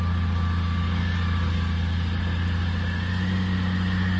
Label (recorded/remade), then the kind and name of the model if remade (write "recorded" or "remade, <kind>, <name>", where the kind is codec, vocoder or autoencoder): recorded